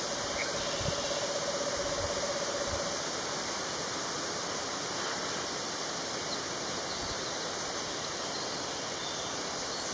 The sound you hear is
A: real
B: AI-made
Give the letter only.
A